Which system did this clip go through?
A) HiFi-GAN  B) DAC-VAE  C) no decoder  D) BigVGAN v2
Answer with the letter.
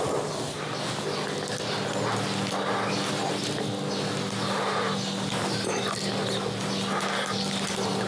C